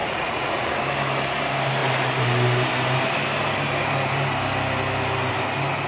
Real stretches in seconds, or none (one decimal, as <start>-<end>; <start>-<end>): 0.7-5.9